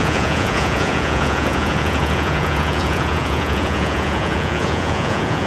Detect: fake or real fake